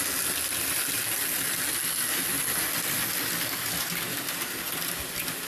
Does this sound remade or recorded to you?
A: recorded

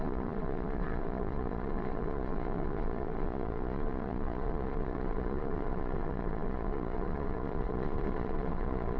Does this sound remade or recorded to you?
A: remade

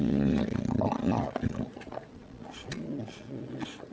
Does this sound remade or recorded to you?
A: remade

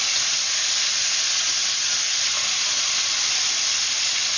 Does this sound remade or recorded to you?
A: recorded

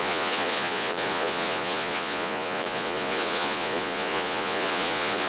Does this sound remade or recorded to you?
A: remade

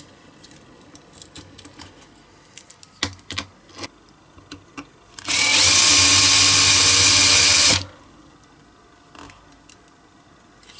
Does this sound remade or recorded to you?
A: recorded